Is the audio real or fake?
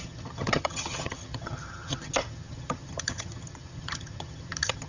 fake